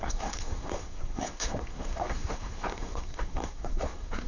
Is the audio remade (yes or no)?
yes